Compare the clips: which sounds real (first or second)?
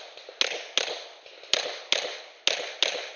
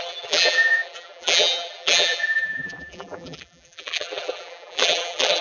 first